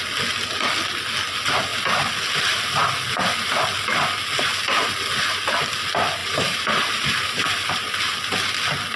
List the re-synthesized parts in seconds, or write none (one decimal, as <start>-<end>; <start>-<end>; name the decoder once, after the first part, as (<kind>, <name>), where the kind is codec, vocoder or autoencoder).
6.2-8.0 (vocoder, BigVGAN v2)